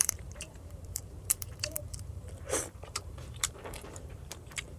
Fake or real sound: fake